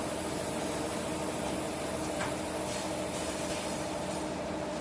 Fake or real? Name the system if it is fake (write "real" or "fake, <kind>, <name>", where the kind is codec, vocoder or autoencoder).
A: real